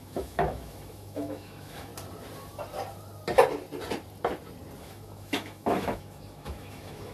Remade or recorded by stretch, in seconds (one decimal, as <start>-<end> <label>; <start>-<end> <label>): 0.0-1.9 remade; 1.9-4.8 recorded; 4.8-7.1 remade